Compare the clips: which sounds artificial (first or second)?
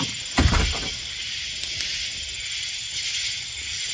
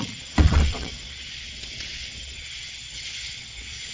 second